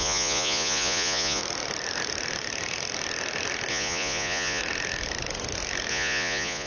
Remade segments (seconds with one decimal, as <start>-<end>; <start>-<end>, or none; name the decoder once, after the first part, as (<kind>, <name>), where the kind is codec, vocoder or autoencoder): 0.0-1.4 (vocoder, Vocos); 3.7-4.6; 5.9-6.7